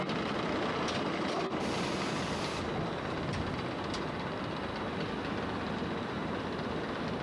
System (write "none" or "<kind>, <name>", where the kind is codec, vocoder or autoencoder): none